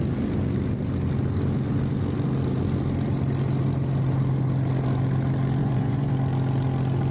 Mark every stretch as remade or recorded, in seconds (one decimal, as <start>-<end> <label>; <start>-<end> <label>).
0.0-5.6 recorded; 5.6-6.1 remade; 6.1-7.1 recorded